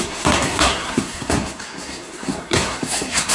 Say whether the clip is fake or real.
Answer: fake